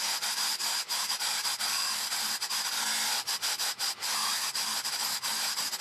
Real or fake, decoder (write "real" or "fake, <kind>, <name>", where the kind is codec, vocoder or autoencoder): real